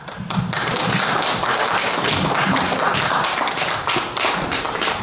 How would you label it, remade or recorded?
remade